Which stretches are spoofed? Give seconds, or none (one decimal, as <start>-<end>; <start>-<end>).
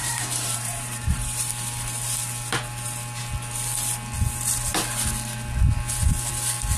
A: 0.0-1.5